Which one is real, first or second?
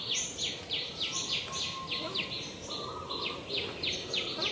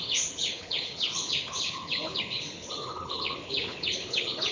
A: first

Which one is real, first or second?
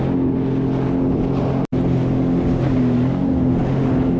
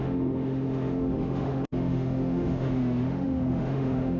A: first